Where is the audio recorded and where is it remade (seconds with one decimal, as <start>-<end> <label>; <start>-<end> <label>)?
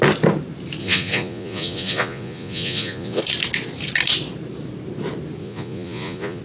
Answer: 0.0-0.8 recorded; 0.8-3.2 remade; 3.2-5.4 recorded; 5.4-6.4 remade